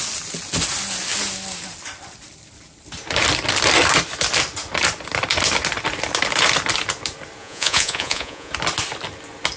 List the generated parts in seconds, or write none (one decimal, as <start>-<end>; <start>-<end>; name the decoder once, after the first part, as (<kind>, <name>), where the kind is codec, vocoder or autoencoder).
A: 7.4-8.5 (vocoder, Vocos)